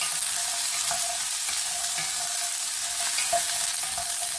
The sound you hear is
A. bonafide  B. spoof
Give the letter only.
A